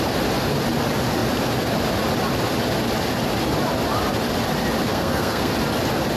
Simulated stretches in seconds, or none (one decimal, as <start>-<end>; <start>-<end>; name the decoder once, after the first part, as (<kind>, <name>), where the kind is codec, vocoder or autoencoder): 4.9-5.5 (codec, SNAC)